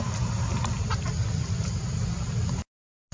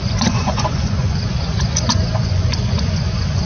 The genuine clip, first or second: first